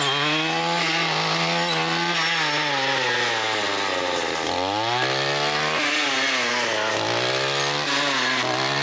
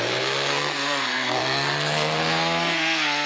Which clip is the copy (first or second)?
second